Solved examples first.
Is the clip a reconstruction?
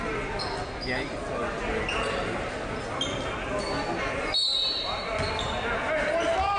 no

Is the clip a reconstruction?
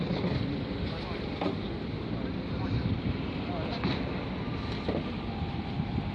no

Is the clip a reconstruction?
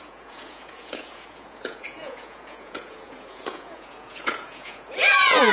yes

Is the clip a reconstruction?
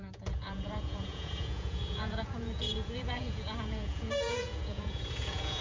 yes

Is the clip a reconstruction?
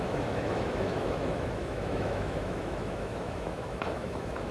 yes